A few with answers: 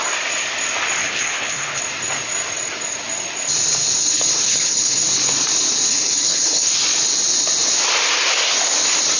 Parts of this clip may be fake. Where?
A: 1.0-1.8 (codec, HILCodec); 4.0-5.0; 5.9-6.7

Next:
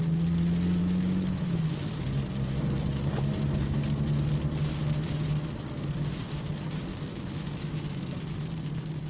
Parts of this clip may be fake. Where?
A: 0.8-1.6 (autoencoder, DAC-VAE); 6.9-8.2